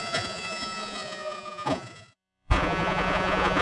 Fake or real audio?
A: fake